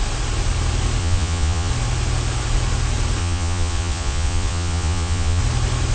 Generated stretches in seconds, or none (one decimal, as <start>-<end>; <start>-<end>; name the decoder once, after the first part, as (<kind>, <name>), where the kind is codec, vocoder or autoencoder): 1.0-1.7 (vocoder, Vocos); 3.2-5.4